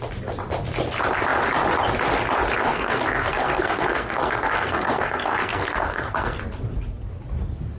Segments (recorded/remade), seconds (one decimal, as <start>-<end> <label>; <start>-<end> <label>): 0.0-2.7 recorded; 2.7-6.4 remade; 6.4-7.8 recorded